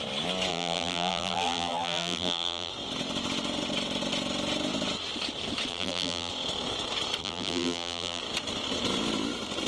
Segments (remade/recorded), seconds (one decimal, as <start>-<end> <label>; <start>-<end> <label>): 0.0-0.5 recorded; 0.5-2.7 remade; 2.7-5.7 recorded; 5.7-6.3 remade; 6.3-7.2 recorded; 7.2-8.2 remade; 8.2-9.7 recorded